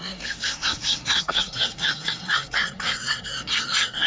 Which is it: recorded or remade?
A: remade